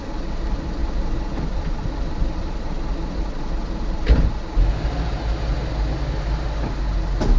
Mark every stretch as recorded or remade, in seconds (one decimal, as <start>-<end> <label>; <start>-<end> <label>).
0.0-7.4 recorded